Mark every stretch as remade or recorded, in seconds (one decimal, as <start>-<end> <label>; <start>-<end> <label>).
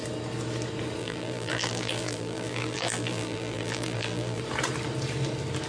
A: 0.0-1.0 recorded; 1.0-4.4 remade; 4.4-5.7 recorded